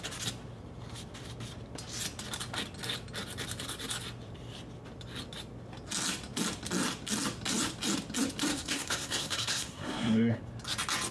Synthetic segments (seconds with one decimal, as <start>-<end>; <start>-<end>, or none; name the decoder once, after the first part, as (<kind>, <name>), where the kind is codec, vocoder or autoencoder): 8.5-10.4 (codec, SNAC)